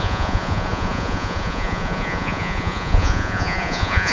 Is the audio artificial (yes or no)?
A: yes